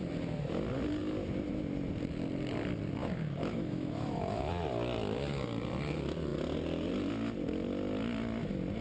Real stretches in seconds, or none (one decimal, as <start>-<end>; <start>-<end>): 0.0-3.0; 4.5-8.8